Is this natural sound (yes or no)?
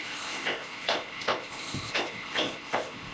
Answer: no